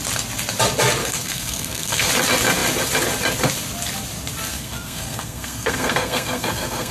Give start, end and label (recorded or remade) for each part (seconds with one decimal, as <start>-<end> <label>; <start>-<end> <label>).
0.0-1.0 recorded; 1.0-2.1 remade; 2.1-4.5 recorded; 4.5-6.9 remade

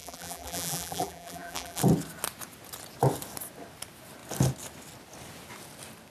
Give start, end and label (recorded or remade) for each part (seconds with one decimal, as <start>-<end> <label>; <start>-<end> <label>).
0.0-1.8 remade; 1.8-6.1 recorded

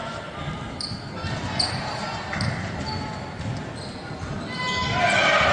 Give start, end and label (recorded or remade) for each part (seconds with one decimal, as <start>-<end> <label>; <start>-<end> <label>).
0.0-5.5 recorded

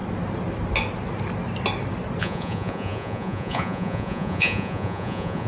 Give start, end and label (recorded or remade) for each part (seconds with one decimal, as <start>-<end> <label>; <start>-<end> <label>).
0.0-2.2 recorded; 2.2-5.5 remade